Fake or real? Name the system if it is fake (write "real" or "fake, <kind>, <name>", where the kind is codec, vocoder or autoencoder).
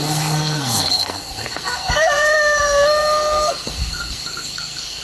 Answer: fake, codec, SNAC